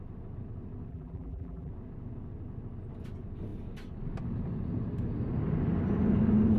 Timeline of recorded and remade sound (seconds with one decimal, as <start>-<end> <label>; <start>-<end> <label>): 0.0-0.9 recorded; 0.9-1.7 remade; 1.7-6.6 recorded